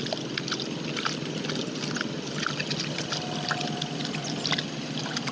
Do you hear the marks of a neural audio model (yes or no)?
no